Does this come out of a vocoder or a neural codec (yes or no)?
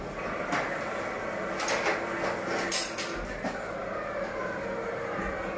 no